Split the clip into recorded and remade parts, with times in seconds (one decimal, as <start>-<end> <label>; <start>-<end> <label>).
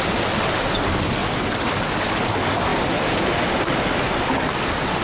0.0-5.0 recorded